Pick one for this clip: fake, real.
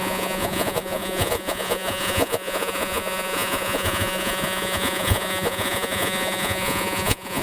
fake